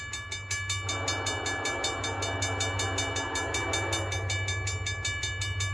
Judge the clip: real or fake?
real